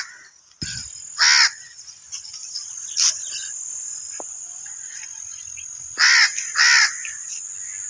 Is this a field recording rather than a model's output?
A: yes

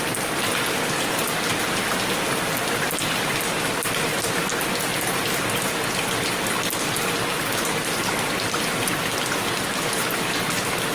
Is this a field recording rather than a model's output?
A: yes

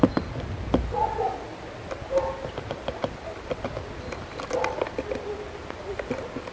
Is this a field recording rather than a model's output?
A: yes